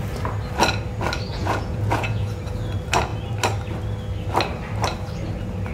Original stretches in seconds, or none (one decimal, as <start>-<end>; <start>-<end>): 0.0-1.3; 2.4-5.7